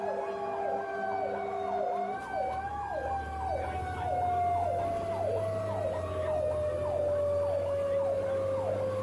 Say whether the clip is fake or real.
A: real